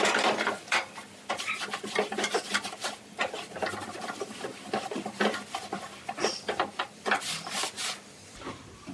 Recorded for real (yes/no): no